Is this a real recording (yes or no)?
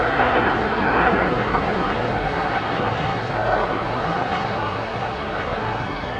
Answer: no